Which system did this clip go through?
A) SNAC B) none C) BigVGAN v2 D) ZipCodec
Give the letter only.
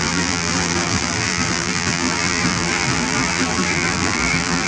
C